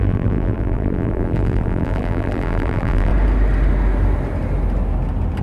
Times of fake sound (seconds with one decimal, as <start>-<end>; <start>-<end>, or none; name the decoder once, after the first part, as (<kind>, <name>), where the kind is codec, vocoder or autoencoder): 0.0-3.1 (vocoder, BigVGAN v2)